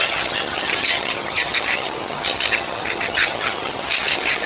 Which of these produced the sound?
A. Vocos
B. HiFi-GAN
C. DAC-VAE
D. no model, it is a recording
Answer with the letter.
B